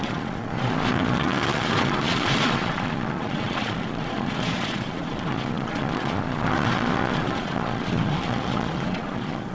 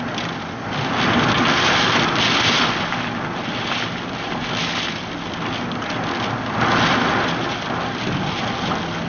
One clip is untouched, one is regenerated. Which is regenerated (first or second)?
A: first